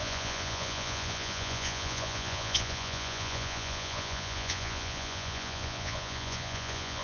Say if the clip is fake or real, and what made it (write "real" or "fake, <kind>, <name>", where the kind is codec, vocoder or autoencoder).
fake, vocoder, Vocos